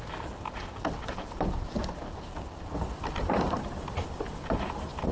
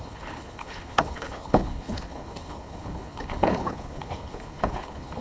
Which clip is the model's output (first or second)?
second